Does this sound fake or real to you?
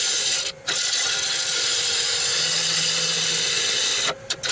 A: real